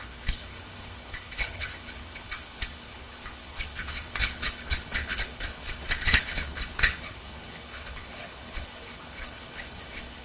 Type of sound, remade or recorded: remade